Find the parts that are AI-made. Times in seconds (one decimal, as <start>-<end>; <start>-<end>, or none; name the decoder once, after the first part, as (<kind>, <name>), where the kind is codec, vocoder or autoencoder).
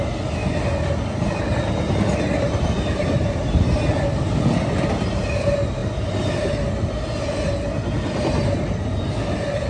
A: none